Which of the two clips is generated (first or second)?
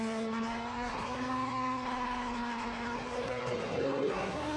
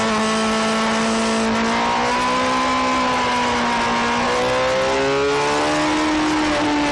first